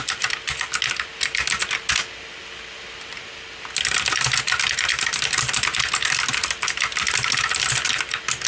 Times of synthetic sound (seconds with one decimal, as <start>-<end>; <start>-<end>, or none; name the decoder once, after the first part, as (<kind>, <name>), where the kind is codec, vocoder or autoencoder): none